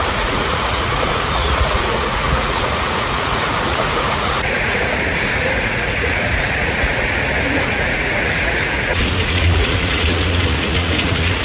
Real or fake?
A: fake